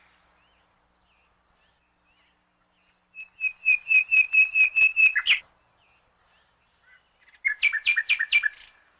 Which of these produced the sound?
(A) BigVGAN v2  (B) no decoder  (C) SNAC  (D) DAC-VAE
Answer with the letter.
B